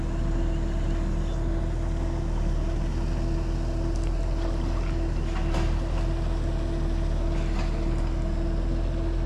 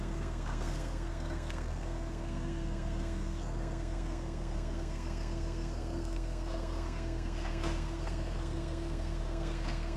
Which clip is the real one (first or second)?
first